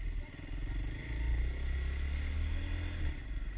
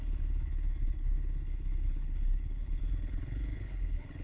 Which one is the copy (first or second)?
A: second